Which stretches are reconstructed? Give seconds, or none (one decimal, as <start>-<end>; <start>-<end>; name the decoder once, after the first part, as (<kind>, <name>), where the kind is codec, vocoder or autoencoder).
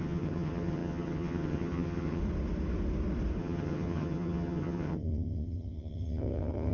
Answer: 0.0-2.2 (vocoder, HiFi-GAN); 3.4-6.7